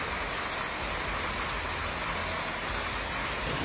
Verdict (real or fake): real